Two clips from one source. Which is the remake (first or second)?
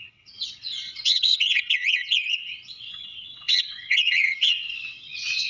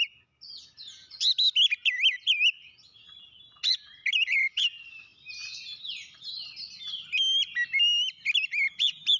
first